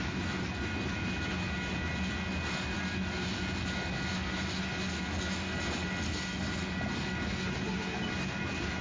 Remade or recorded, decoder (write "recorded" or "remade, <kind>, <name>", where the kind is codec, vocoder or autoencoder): recorded